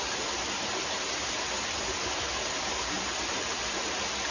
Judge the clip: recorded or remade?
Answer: recorded